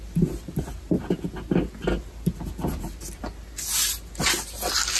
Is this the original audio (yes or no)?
yes